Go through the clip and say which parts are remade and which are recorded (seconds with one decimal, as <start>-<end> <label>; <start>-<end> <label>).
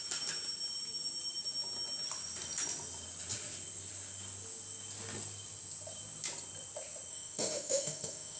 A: 0.0-7.1 recorded; 7.1-8.4 remade